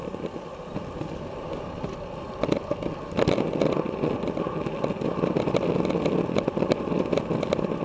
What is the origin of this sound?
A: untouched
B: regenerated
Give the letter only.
A